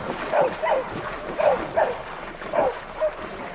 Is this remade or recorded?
remade